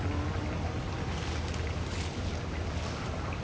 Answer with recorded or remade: recorded